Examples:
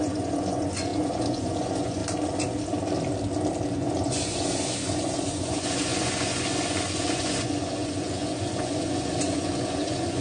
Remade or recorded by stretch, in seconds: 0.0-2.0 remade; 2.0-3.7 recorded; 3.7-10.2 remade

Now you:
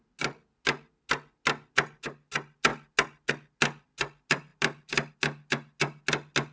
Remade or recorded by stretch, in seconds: 0.0-6.5 recorded

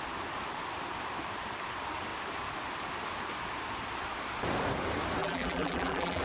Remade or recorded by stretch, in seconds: 0.0-5.2 recorded; 5.2-6.2 remade

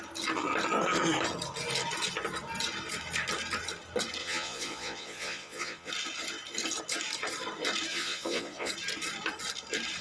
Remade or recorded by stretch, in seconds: 0.0-4.2 recorded; 4.2-5.9 remade; 5.9-7.9 recorded; 7.9-8.7 remade; 8.7-10.0 recorded

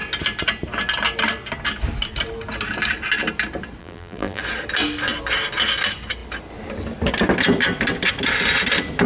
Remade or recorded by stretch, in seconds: 0.0-3.8 recorded; 3.8-4.4 remade; 4.4-9.1 recorded

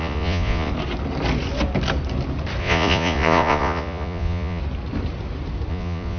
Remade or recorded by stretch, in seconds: 0.0-0.7 remade; 0.7-2.6 recorded; 2.6-4.6 remade; 4.6-5.7 recorded; 5.7-6.2 remade

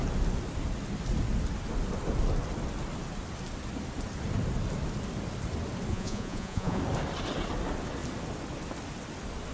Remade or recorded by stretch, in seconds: 0.0-5.9 recorded; 5.9-6.8 remade; 6.8-9.5 recorded

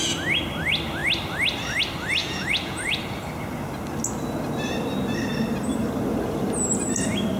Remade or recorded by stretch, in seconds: 0.0-2.2 recorded; 2.2-3.0 remade; 3.0-7.4 recorded